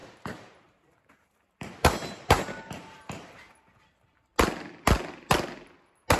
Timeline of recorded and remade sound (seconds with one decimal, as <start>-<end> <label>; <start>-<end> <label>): 0.0-3.7 remade; 3.7-6.2 recorded